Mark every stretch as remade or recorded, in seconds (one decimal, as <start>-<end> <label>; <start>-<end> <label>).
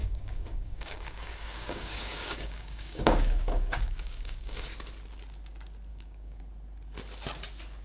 0.0-4.7 remade; 4.7-5.9 recorded; 5.9-6.4 remade; 6.4-7.8 recorded